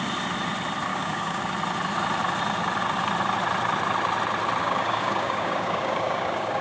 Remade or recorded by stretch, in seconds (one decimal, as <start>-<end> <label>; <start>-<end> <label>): 0.0-0.9 recorded; 0.9-1.4 remade; 1.4-4.6 recorded; 4.6-6.6 remade